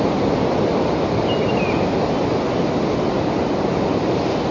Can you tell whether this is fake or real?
real